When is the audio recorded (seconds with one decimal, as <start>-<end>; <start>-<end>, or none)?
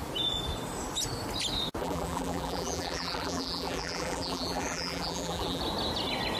0.0-1.8; 5.6-6.4